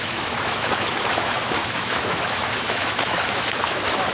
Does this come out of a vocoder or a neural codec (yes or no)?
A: yes